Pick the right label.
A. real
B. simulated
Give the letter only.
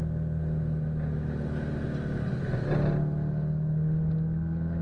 A